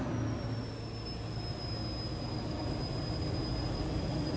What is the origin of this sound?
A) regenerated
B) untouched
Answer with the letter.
B